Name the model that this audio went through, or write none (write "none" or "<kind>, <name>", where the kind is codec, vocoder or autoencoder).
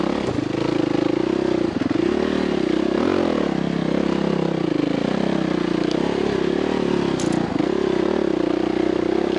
none